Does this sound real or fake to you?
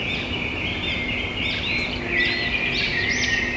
real